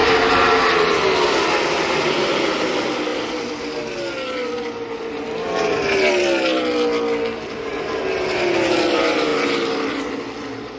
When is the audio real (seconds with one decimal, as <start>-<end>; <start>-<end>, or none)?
0.7-10.8